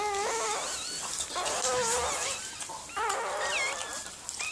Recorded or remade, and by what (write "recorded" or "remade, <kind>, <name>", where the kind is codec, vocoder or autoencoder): recorded